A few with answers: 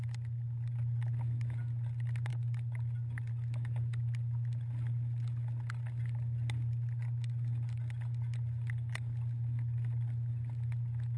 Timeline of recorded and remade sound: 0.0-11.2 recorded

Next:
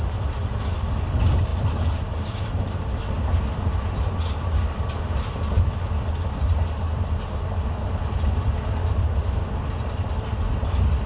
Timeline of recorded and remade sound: 0.0-11.1 recorded